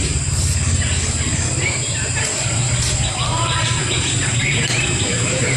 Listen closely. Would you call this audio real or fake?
fake